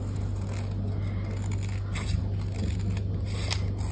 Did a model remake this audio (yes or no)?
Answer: no